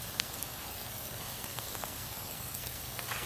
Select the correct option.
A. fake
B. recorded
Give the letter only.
A